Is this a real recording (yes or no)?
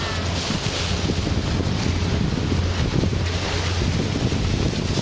yes